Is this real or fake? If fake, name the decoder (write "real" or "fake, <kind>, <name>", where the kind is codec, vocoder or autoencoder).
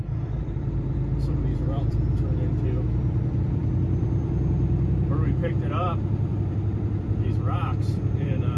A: fake, vocoder, BigVGAN v2